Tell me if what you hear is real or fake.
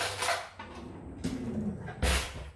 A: real